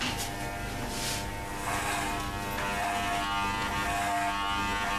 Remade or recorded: recorded